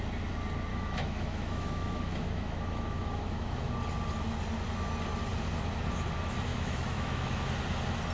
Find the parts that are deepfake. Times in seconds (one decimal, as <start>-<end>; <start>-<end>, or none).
0.7-3.7; 6.5-7.5